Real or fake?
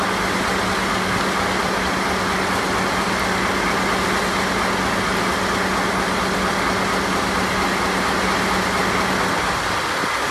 real